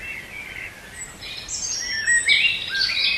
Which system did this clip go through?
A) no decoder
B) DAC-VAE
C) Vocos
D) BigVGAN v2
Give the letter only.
A